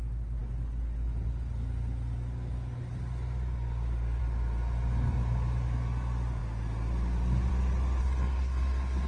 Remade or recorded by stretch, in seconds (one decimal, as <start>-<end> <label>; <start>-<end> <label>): 0.0-8.0 recorded; 8.0-9.1 remade